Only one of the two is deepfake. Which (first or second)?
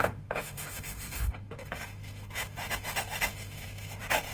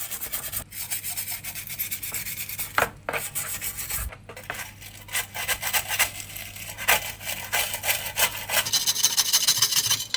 first